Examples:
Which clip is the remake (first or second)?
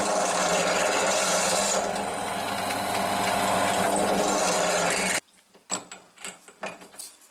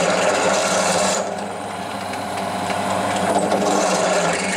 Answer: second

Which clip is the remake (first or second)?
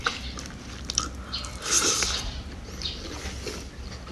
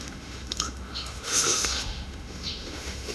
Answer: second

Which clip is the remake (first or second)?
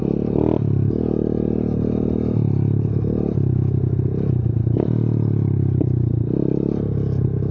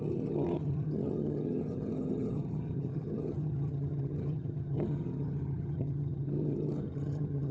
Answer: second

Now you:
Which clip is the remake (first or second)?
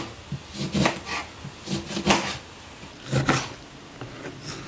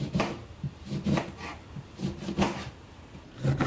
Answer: second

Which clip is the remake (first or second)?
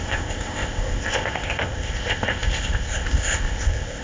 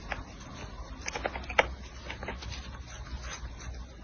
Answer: first